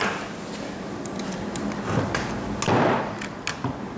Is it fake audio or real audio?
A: real